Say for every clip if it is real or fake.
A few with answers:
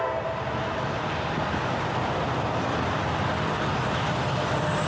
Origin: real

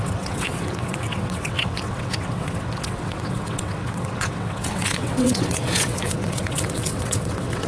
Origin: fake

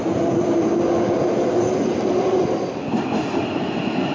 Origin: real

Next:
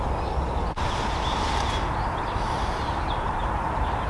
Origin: real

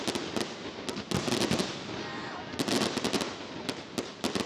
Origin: real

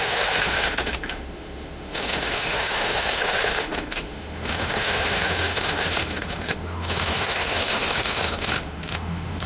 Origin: fake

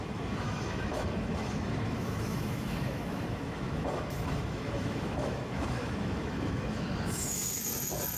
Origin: fake